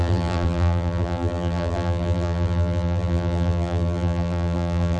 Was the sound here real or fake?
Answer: fake